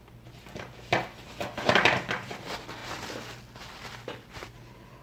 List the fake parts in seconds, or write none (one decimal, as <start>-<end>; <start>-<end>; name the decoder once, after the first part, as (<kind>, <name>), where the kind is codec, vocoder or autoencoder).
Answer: none